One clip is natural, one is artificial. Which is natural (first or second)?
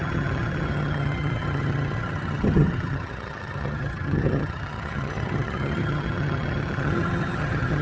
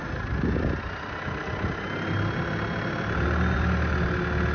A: second